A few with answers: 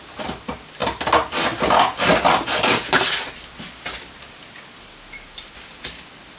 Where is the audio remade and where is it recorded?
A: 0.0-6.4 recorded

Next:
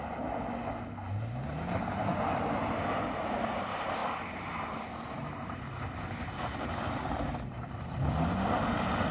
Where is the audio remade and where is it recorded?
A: 0.0-4.0 recorded; 4.0-8.2 remade; 8.2-9.1 recorded

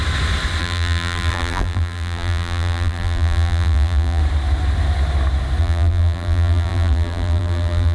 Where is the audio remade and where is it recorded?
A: 0.0-0.6 recorded; 0.6-4.2 remade; 4.2-5.6 recorded; 5.6-7.9 remade

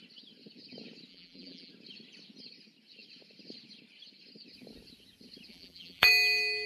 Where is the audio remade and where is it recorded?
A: 0.0-1.1 recorded; 1.1-1.7 remade; 1.7-5.5 recorded; 5.5-6.1 remade; 6.1-6.7 recorded